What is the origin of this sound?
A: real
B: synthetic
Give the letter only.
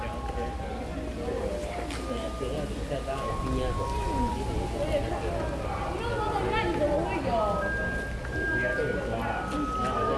A